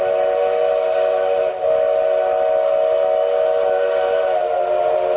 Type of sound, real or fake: real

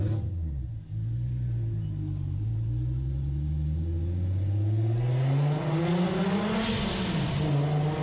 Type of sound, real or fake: real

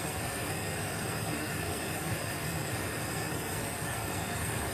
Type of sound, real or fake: fake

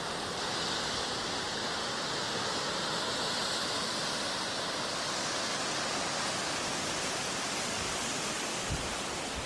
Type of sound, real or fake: real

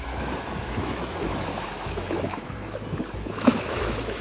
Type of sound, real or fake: fake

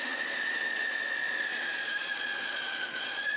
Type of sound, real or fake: fake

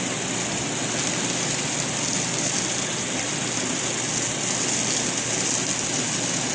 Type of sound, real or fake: real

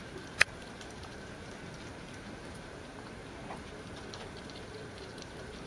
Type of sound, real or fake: fake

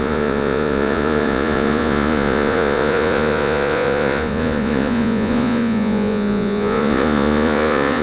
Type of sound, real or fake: fake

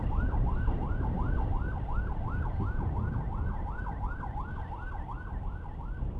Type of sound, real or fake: real